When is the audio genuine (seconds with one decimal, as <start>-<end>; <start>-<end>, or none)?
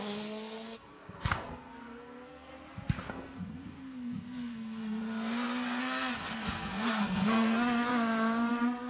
2.5-3.1; 5.0-5.8; 7.9-8.5